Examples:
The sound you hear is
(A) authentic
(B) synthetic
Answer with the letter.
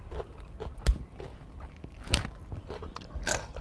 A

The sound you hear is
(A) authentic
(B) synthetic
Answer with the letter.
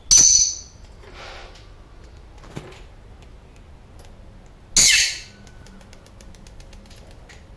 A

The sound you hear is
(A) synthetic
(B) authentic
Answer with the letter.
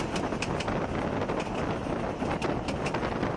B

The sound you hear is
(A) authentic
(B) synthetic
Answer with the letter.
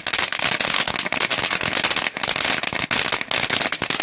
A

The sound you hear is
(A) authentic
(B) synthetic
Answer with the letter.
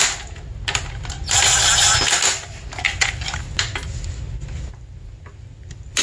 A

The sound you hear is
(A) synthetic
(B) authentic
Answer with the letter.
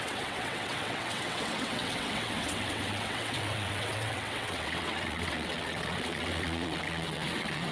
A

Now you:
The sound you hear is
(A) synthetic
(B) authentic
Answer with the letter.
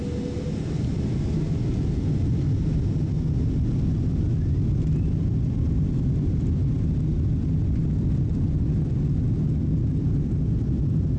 B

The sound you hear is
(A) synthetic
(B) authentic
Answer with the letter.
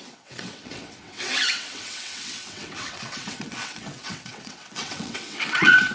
A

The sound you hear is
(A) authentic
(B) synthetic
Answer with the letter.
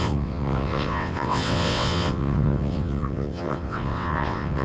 B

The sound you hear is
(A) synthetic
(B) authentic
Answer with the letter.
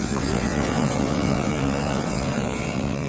A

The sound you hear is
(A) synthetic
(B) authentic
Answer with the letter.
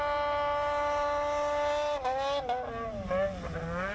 B